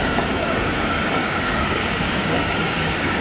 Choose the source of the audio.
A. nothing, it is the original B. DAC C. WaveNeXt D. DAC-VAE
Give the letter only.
B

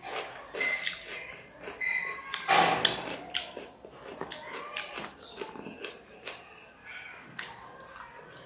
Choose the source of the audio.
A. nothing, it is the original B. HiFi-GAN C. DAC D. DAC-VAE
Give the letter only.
A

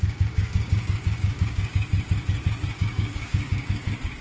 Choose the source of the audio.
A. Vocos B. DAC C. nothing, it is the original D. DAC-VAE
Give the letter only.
B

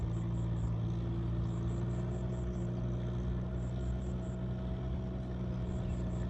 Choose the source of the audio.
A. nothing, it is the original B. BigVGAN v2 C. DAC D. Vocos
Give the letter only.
A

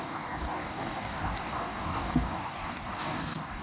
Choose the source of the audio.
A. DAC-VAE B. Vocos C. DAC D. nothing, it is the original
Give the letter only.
C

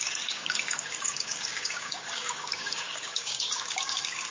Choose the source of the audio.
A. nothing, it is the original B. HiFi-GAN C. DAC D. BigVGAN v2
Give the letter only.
C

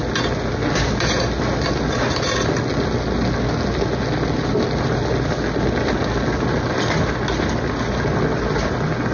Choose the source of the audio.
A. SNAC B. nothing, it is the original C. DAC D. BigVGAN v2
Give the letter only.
B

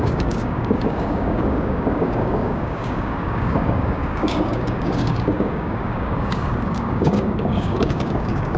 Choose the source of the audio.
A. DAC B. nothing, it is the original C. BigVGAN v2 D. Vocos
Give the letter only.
A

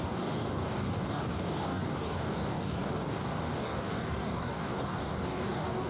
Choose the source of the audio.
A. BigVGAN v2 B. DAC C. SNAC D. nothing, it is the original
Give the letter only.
B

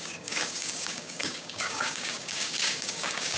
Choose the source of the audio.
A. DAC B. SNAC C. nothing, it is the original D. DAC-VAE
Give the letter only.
A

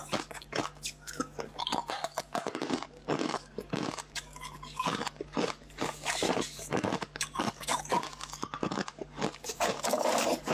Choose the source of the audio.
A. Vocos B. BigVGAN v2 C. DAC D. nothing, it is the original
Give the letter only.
C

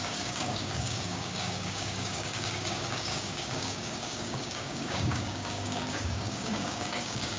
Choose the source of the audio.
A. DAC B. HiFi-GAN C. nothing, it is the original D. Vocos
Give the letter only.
A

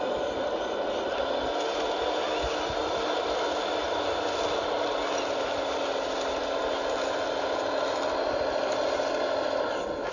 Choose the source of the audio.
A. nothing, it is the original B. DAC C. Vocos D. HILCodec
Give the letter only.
A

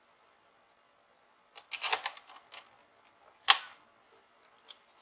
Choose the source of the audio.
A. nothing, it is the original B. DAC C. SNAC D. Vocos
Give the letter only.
A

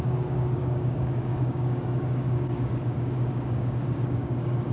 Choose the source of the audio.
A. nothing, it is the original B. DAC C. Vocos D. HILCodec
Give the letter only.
B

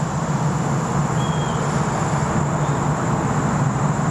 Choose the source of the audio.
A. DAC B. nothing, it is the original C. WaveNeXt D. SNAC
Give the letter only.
B